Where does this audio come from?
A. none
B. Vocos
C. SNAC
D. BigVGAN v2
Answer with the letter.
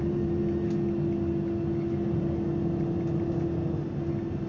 A